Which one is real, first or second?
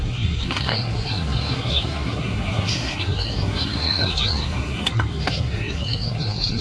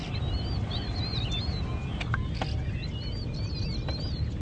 second